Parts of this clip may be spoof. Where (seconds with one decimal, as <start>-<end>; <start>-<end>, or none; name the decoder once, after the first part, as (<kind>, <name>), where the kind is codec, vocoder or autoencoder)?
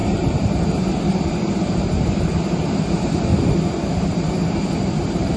0.0-3.3 (vocoder, BigVGAN v2); 4.0-5.4